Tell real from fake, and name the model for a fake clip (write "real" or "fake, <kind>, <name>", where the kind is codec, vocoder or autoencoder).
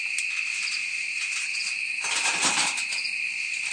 real